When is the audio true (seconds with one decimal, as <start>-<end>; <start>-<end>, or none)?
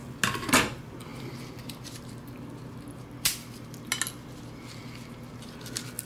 0.0-6.1